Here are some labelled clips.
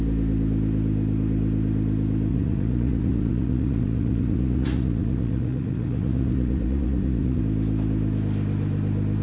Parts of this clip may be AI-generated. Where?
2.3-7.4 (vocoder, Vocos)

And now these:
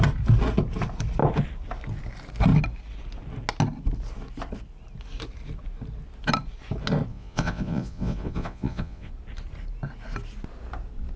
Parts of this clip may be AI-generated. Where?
7.1-9.1 (vocoder, Vocos)

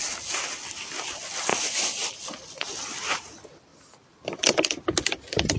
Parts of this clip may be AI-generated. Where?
none

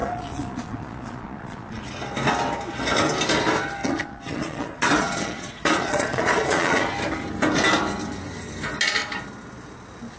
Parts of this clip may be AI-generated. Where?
0.0-1.8 (vocoder, Vocos); 3.8-6.8

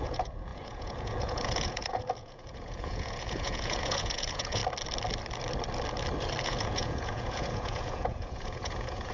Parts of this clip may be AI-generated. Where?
0.0-4.6 (vocoder, Vocos); 6.4-9.1